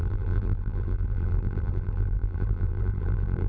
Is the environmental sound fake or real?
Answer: fake